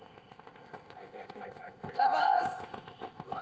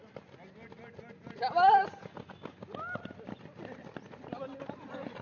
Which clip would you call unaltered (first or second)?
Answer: second